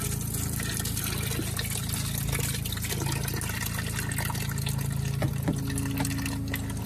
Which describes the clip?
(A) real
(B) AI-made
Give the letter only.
A